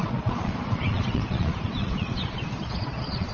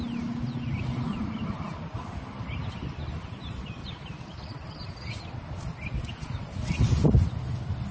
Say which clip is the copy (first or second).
first